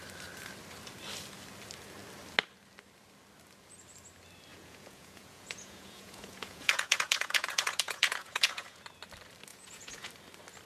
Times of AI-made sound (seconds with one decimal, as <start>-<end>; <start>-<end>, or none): 4.5-8.8; 9.5-10.1